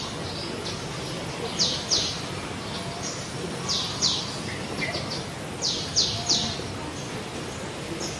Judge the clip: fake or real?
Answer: real